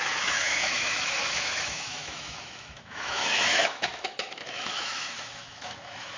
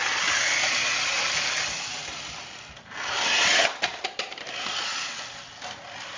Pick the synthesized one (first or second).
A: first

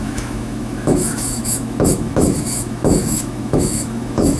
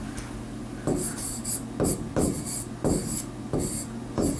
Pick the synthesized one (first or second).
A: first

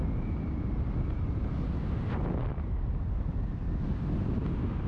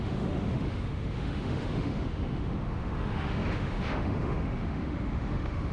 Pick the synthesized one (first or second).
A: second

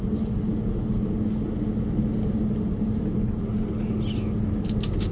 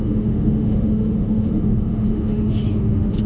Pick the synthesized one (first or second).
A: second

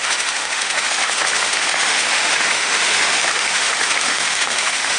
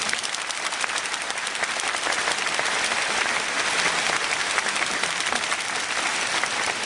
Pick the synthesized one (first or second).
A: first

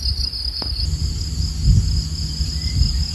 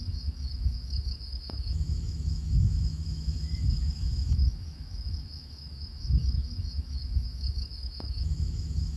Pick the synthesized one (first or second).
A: second